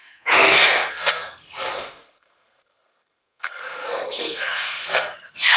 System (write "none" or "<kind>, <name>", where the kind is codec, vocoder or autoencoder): codec, SNAC